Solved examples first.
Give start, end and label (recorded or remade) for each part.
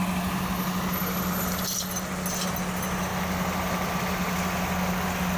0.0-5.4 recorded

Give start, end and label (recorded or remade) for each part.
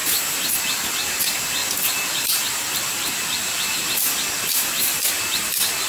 0.0-5.9 recorded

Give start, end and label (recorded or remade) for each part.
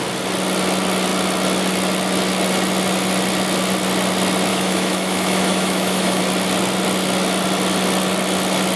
0.0-4.5 recorded; 4.5-6.2 remade; 6.2-8.8 recorded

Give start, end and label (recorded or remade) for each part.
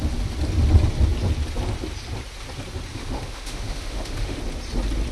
0.0-2.9 recorded; 2.9-4.4 remade; 4.4-5.1 recorded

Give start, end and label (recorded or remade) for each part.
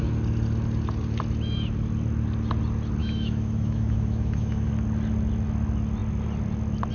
0.0-3.0 recorded; 3.0-4.7 remade; 4.7-6.9 recorded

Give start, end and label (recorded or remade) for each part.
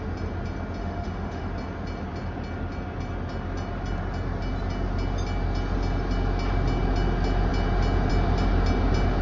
0.0-0.8 recorded; 0.8-1.5 remade; 1.5-9.2 recorded